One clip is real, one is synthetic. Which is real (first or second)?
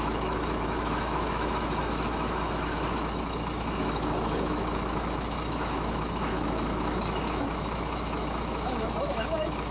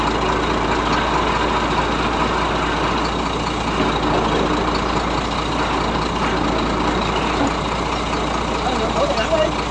second